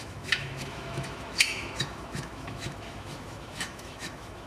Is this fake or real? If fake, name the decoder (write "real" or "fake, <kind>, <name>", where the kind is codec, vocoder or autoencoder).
fake, autoencoder, DAC-VAE